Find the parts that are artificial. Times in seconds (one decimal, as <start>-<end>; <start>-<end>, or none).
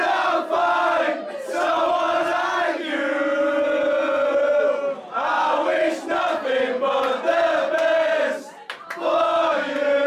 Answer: none